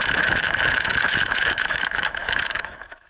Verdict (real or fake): fake